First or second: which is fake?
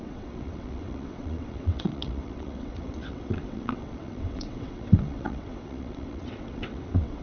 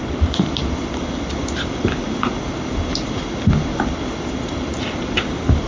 first